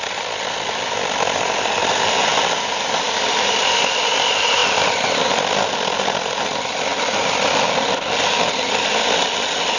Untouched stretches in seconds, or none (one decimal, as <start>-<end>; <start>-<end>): 0.0-9.8